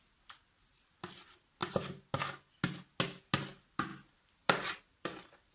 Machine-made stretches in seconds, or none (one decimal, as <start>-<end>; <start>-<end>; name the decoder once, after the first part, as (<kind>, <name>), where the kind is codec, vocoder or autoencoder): none